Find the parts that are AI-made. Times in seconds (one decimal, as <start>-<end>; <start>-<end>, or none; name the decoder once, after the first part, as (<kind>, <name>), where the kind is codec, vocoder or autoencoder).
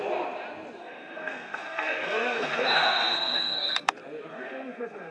0.8-3.9 (codec, SNAC); 4.3-5.1